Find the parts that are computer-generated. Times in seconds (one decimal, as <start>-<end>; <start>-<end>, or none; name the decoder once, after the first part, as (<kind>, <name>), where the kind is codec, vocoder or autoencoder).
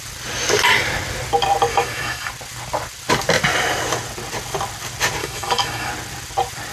1.7-2.3 (autoencoder, DAC-VAE); 5.2-5.9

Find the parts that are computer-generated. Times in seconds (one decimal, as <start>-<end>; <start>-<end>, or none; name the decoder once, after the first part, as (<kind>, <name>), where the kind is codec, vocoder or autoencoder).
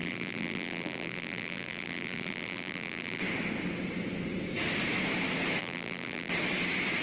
0.0-3.2 (vocoder, BigVGAN v2); 5.6-6.3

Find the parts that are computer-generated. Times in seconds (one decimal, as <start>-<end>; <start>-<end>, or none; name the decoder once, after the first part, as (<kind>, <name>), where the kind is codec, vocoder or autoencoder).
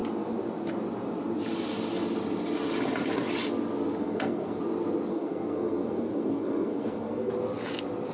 4.0-4.6 (codec, SNAC); 5.1-7.3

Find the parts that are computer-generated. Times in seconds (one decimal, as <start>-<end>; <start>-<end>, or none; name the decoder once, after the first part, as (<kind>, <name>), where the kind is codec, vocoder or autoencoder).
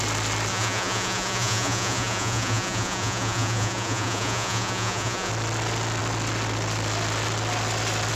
0.5-5.3 (vocoder, Vocos)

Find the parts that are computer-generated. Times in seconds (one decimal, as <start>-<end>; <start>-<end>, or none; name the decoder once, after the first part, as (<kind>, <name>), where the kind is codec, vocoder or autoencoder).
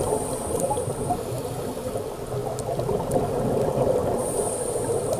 none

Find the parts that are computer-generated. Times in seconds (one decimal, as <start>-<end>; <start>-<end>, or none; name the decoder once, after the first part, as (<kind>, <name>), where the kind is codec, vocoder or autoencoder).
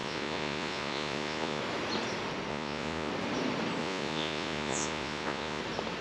0.0-1.6 (vocoder, Vocos); 2.5-3.1; 3.8-5.6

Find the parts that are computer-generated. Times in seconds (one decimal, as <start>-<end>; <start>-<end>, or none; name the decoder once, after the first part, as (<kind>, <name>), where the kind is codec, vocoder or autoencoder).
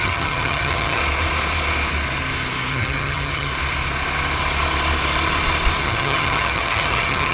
0.0-1.0 (vocoder, HiFi-GAN); 2.7-3.5; 5.8-7.3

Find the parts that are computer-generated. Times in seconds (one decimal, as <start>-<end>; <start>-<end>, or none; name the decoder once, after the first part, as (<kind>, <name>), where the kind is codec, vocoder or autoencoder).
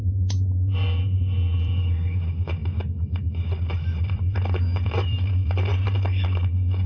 none